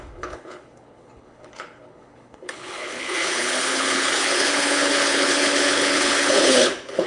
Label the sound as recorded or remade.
remade